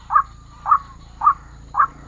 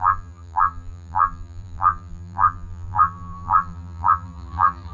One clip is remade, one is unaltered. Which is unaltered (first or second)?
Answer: first